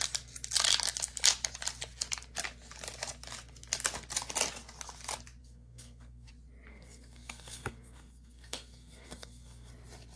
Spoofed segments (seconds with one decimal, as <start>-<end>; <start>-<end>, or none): 5.4-6.3; 6.7-9.7